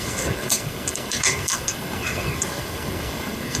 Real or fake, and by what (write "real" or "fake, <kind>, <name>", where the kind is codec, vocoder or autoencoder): fake, codec, SNAC